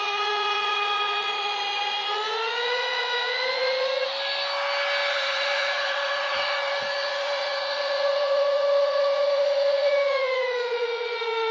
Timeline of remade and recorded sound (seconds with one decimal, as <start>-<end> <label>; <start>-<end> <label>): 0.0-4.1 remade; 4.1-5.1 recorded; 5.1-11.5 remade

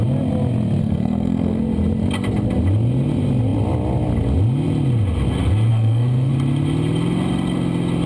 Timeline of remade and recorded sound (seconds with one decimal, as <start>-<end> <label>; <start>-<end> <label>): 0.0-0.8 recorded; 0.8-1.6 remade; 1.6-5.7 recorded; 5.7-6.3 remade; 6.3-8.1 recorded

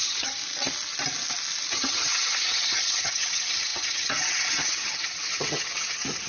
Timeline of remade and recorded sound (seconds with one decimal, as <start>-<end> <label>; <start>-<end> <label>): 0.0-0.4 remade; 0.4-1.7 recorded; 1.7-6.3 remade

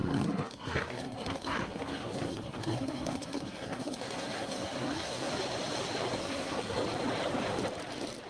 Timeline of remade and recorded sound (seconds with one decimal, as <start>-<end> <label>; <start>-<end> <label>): 0.0-5.3 remade; 5.3-6.2 recorded; 6.2-6.8 remade; 6.8-8.3 recorded